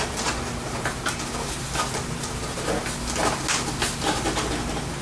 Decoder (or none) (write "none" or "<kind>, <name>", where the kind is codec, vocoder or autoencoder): none